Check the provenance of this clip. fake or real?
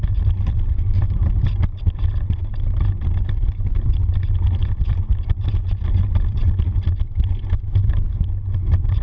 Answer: real